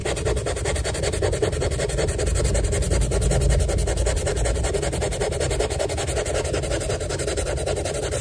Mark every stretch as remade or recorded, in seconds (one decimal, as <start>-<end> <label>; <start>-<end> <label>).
0.0-2.2 remade; 2.2-8.2 recorded